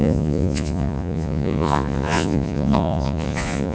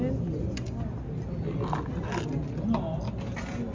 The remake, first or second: first